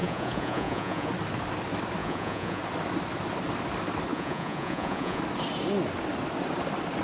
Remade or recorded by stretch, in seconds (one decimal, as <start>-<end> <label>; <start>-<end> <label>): 0.0-1.1 remade; 1.1-2.0 recorded; 2.0-2.6 remade; 2.6-4.1 recorded; 4.1-5.2 remade; 5.2-7.0 recorded